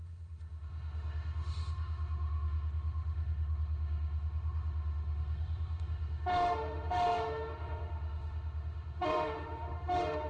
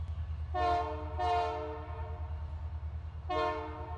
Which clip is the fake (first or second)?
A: first